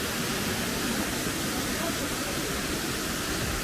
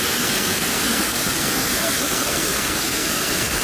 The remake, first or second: second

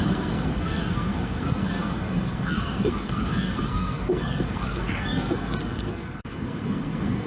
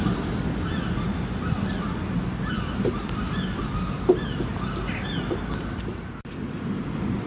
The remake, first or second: first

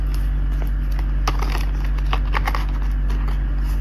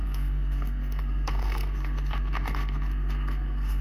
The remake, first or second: second